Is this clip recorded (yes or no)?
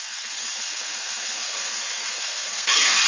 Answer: no